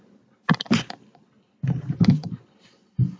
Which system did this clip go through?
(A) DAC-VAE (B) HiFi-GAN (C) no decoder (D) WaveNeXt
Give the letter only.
C